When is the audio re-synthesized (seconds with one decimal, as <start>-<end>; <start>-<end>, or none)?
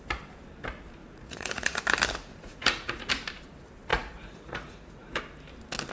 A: 1.0-1.8; 2.3-3.1; 3.9-5.2